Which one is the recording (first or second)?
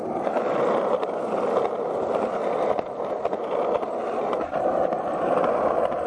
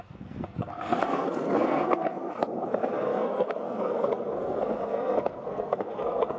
first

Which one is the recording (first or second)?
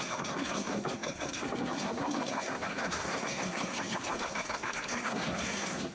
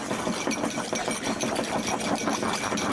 second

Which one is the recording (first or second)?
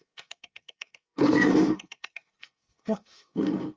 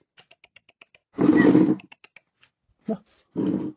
second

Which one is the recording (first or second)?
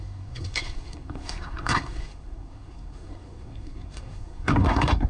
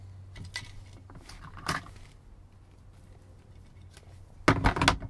second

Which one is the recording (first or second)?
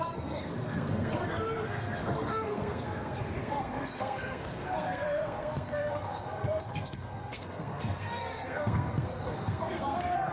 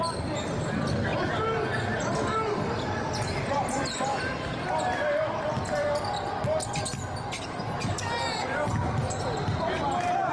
second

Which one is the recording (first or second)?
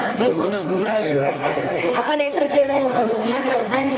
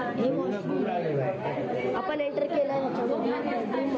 second